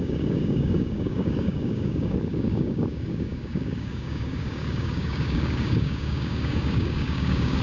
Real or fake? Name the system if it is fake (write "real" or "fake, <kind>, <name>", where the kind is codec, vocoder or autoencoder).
fake, codec, DAC